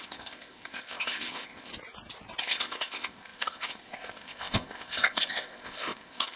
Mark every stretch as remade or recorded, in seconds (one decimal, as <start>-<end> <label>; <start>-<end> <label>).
0.0-1.7 remade; 1.7-2.4 recorded; 2.4-6.4 remade